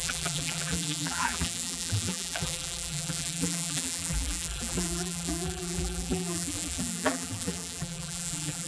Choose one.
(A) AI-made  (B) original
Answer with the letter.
A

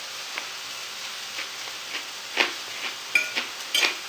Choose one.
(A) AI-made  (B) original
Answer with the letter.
B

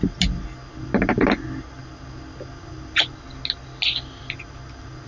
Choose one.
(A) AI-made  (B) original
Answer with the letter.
B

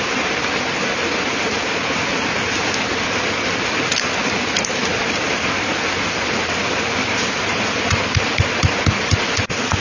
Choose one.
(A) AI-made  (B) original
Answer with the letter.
B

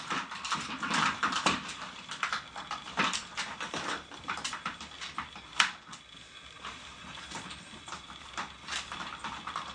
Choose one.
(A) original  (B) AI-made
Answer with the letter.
A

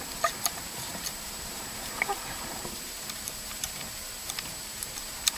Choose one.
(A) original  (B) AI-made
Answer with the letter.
B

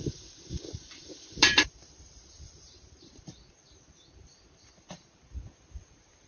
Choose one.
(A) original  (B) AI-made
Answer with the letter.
B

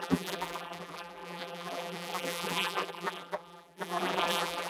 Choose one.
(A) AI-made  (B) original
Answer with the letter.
A